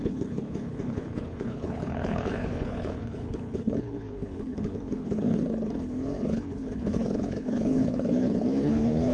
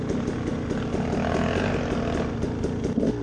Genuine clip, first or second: second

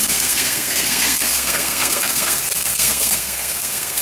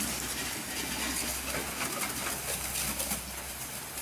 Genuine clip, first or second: second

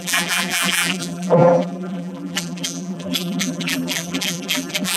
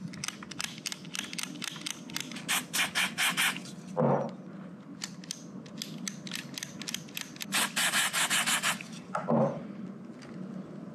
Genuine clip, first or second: second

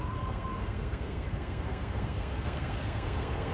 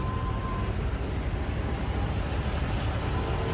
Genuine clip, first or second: second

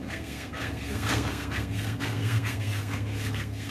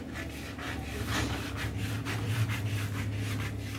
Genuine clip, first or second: second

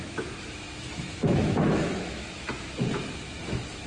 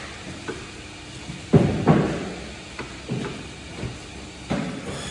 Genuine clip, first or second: second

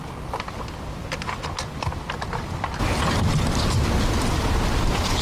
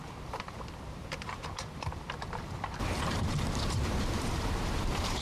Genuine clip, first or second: first